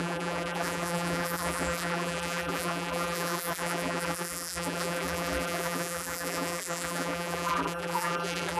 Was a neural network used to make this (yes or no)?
yes